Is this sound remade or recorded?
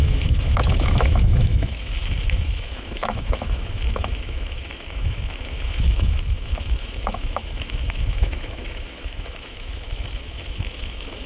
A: remade